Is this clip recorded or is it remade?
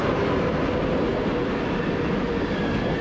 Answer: recorded